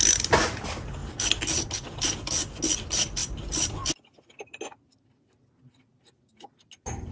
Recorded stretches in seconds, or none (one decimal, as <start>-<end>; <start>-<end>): 0.0-7.1